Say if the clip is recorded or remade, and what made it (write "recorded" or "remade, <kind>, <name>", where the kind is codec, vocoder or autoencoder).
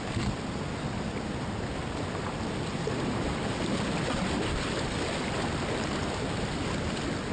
recorded